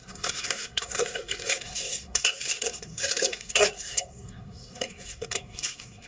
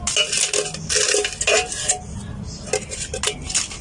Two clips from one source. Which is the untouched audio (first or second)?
second